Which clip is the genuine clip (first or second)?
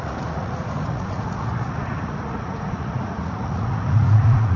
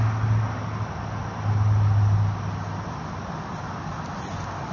second